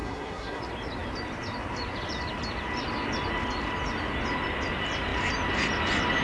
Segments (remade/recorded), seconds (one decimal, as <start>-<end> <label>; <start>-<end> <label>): 0.0-0.6 remade; 0.6-6.2 recorded